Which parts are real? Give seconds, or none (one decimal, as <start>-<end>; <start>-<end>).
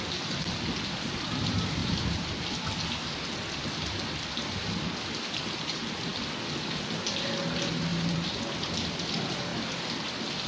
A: 0.0-1.8; 2.5-6.1; 6.6-7.9; 8.4-10.5